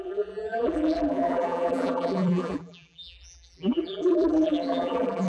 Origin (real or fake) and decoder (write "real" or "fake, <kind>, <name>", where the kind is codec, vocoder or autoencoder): fake, vocoder, BigVGAN v2